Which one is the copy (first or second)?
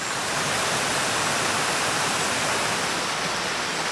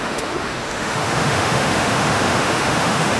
second